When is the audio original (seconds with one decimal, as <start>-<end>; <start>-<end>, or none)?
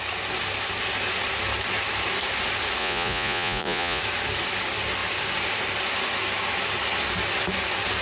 0.0-2.8; 4.0-8.0